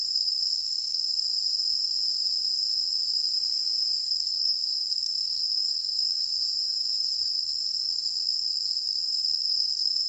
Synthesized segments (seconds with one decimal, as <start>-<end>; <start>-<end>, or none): 0.0-1.3; 4.0-6.3; 7.3-10.1